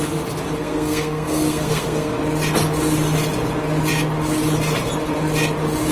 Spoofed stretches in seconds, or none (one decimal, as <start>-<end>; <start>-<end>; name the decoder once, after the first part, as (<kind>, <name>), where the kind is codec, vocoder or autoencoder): 0.6-2.1 (codec, SNAC)

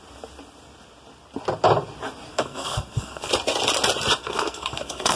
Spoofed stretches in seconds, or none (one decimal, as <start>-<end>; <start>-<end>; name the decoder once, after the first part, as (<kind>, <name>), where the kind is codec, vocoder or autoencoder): 2.3-3.3 (codec, SNAC); 4.2-5.2

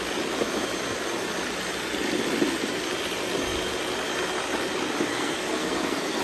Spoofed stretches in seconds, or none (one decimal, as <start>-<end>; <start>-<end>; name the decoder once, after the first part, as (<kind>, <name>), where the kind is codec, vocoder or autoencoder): 5.1-6.2 (codec, SNAC)

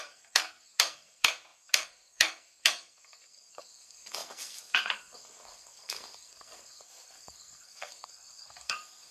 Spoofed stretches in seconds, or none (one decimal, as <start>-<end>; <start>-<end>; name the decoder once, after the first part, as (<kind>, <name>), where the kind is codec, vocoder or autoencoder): 0.0-9.1 (codec, SNAC)

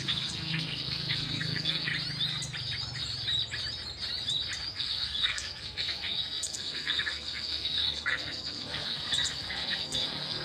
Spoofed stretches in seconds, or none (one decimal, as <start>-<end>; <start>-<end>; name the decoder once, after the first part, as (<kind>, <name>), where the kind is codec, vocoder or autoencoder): 0.0-1.9 (codec, SNAC); 4.7-10.4

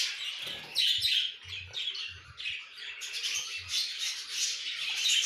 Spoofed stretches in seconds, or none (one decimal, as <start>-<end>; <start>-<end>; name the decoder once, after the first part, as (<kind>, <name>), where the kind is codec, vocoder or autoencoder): none

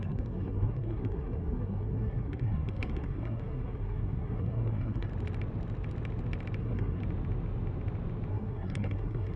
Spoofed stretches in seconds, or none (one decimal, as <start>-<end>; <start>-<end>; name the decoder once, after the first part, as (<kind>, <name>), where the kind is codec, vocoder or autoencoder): 0.0-5.1 (codec, SNAC); 6.6-7.0; 8.3-9.4

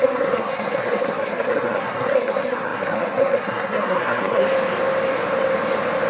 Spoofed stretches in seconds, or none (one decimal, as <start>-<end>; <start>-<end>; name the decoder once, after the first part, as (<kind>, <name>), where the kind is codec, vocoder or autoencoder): 0.0-4.4 (codec, SNAC)